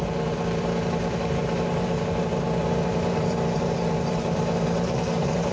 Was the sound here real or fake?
fake